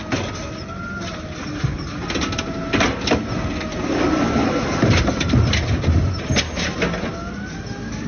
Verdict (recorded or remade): recorded